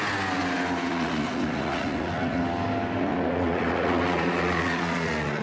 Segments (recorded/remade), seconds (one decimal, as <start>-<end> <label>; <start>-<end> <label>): 0.0-0.9 recorded; 0.9-2.4 remade; 2.4-3.0 recorded; 3.0-5.4 remade